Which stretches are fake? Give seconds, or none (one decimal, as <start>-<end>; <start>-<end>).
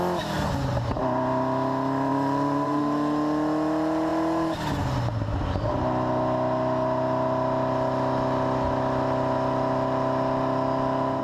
2.1-2.8